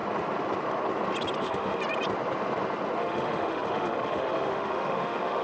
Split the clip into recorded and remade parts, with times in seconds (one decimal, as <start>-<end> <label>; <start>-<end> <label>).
0.0-1.4 recorded; 1.4-1.8 remade; 1.8-3.0 recorded; 3.0-5.4 remade